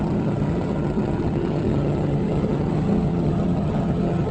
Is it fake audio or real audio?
fake